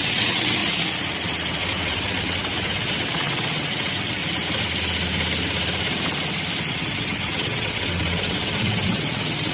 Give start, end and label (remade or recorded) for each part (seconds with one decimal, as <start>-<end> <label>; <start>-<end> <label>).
0.0-0.6 remade; 0.6-1.5 recorded; 1.5-4.2 remade; 4.2-6.7 recorded; 6.7-9.5 remade